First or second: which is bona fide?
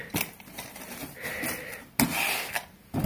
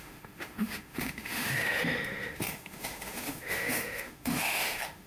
first